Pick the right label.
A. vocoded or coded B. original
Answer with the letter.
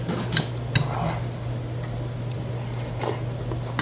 B